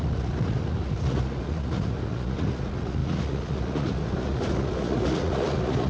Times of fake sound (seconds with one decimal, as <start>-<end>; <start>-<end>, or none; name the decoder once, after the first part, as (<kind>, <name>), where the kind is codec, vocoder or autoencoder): 0.0-5.9 (vocoder, Vocos)

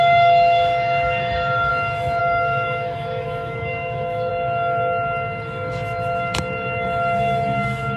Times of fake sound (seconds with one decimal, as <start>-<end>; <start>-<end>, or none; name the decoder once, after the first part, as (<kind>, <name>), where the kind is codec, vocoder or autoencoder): 0.0-1.7 (autoencoder, DAC-VAE); 2.2-4.3